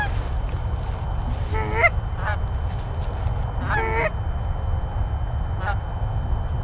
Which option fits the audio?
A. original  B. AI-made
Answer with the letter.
A